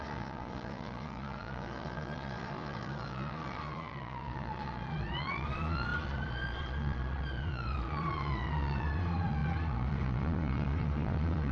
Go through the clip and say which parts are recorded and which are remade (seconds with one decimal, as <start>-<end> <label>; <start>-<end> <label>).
0.0-11.5 remade